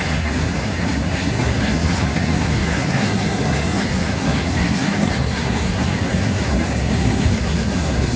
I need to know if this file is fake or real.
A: fake